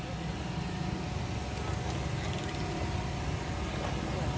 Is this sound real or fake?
real